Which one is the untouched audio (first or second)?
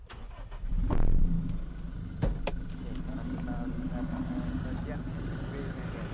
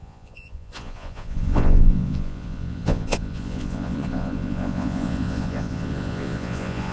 first